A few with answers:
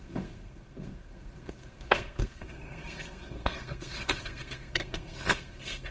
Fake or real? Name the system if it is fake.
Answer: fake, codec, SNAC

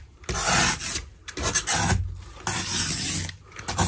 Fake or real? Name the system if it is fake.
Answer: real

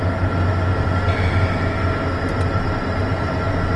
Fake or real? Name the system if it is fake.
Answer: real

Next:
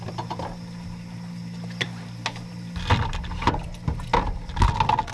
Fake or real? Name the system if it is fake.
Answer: real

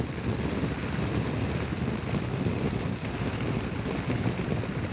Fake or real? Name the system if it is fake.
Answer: real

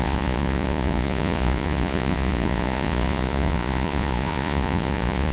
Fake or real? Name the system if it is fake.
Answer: fake, vocoder, Vocos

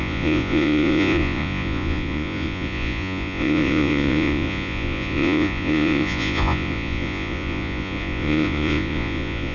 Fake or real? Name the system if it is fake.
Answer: fake, vocoder, Vocos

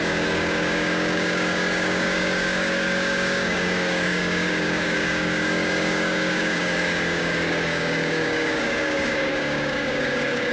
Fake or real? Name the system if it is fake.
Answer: fake, codec, DAC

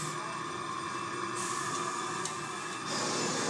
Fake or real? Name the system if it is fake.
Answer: real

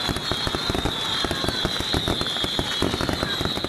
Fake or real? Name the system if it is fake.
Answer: real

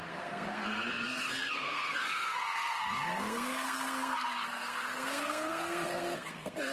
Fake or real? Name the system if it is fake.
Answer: fake, codec, SNAC